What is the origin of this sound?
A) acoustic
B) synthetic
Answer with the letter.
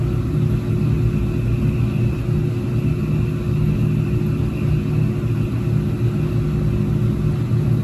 A